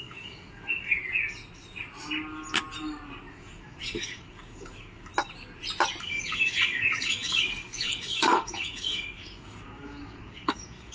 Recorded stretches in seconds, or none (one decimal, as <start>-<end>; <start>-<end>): 1.0-3.3; 5.1-6.0